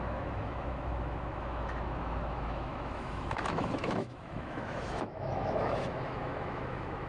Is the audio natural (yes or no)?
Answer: no